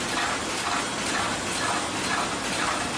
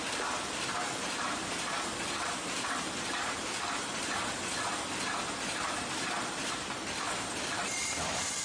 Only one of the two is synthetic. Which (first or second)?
second